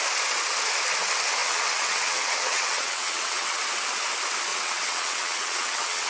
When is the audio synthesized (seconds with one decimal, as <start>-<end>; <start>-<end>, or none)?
1.4-3.6; 4.5-6.1